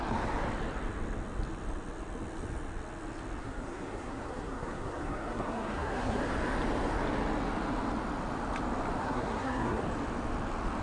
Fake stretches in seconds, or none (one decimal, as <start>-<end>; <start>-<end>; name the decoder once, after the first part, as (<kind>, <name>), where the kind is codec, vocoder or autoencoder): 3.4-6.2 (codec, SNAC); 9.0-9.8

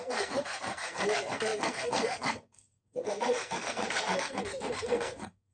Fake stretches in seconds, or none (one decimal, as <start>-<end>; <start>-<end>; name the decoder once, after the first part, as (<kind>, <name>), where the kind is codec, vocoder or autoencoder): 0.0-5.5 (codec, SNAC)